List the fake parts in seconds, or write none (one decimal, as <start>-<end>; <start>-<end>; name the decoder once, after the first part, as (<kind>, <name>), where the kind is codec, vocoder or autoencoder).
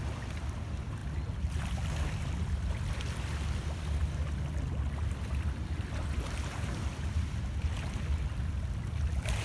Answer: 0.0-1.0 (vocoder, BigVGAN v2); 2.9-9.4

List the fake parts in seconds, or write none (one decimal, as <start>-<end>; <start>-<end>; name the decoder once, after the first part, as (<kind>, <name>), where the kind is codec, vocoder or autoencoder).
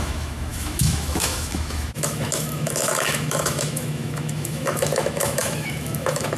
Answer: 0.0-6.4 (autoencoder, DAC-VAE)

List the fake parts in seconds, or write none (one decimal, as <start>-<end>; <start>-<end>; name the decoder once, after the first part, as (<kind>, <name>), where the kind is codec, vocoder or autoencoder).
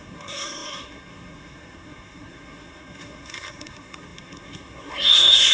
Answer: 0.0-5.5 (codec, SNAC)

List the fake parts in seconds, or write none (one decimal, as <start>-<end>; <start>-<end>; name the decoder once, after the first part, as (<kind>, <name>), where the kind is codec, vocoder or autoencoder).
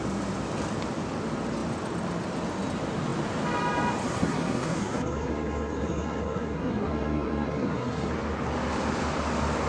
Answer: 4.0-8.1 (codec, SNAC)